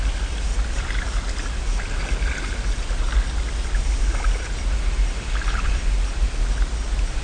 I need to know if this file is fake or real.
real